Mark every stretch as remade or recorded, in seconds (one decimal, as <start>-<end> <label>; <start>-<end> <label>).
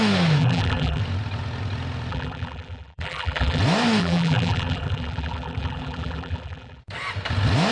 0.0-0.4 recorded; 0.4-1.0 remade; 1.0-2.1 recorded; 2.1-3.6 remade; 3.6-4.0 recorded; 4.0-6.8 remade; 6.8-7.7 recorded